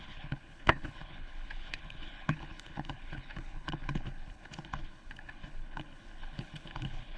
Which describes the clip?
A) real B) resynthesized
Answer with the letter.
B